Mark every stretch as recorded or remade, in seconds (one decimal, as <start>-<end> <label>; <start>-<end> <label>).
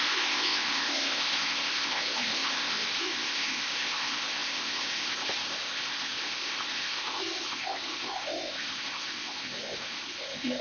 0.0-10.6 remade